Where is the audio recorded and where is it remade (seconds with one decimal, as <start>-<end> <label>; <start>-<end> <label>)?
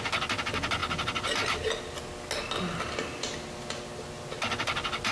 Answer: 0.0-5.1 recorded